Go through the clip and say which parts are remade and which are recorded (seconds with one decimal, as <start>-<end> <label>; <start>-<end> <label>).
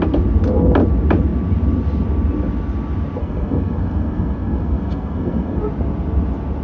0.0-3.2 recorded; 3.2-5.6 remade; 5.6-6.6 recorded